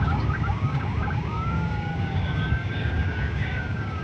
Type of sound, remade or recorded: remade